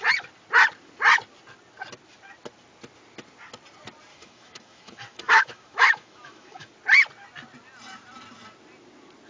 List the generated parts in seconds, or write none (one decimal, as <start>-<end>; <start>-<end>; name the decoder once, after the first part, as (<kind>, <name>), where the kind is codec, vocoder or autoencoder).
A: 4.1-6.7 (autoencoder, DAC-VAE)